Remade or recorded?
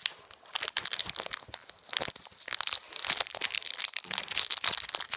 recorded